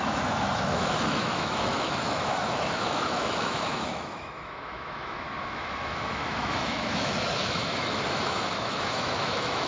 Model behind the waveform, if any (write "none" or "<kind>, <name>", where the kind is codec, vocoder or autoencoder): autoencoder, DAC-VAE